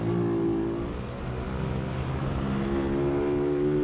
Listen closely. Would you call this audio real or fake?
real